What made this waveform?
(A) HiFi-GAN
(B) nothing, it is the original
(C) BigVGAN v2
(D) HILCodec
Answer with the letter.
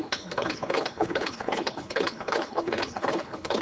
D